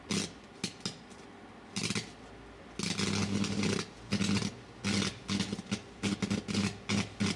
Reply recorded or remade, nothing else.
recorded